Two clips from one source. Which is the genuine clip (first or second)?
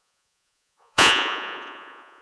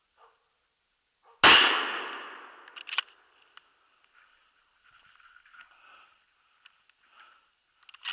second